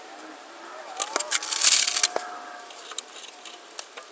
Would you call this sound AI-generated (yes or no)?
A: no